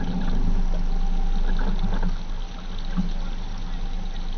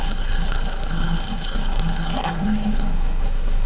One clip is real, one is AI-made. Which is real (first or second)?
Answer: first